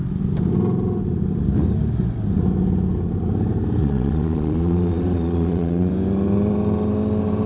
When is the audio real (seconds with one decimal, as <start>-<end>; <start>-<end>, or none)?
0.0-3.8; 5.9-7.5